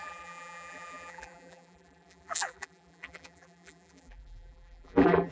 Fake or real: fake